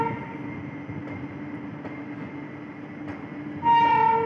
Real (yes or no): yes